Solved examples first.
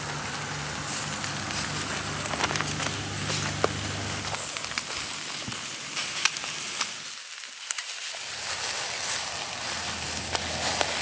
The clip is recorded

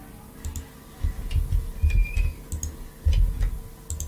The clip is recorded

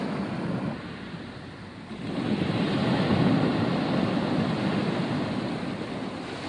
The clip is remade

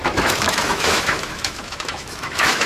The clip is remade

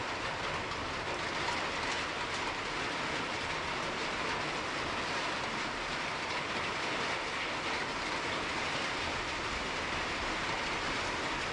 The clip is recorded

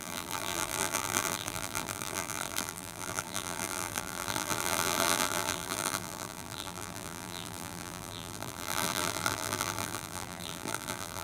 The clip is remade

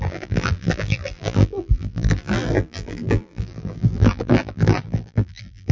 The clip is remade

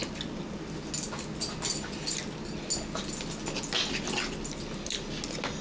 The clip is recorded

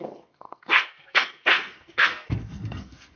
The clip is remade